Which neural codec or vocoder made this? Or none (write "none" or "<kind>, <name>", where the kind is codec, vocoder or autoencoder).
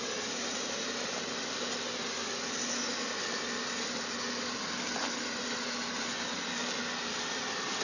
none